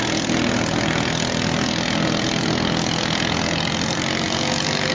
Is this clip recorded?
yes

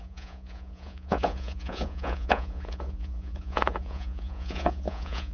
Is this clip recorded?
no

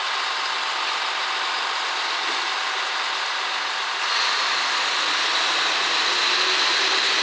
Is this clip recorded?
yes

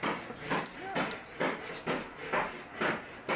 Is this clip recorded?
yes